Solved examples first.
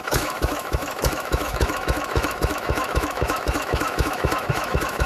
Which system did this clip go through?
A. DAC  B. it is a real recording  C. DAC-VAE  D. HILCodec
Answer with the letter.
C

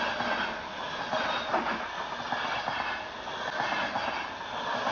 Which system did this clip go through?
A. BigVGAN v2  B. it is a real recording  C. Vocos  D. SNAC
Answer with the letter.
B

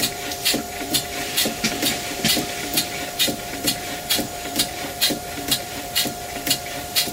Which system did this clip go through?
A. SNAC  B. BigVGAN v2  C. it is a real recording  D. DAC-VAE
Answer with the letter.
B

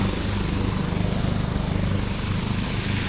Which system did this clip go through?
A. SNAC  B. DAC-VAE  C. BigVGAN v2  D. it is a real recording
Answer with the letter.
D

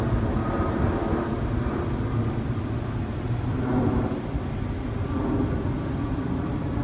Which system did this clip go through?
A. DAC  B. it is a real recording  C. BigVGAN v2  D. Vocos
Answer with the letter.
B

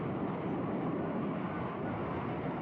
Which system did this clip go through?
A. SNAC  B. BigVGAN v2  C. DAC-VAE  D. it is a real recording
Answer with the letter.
D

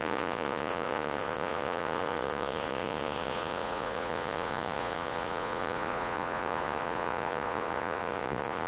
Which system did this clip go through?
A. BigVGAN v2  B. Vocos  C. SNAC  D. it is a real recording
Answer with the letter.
B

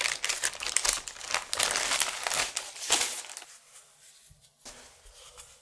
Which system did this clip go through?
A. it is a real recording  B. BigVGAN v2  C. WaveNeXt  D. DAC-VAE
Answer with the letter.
A